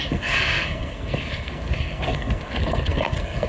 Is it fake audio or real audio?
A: fake